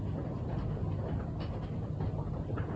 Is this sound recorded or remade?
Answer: recorded